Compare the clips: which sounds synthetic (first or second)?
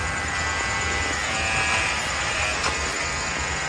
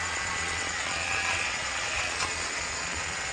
second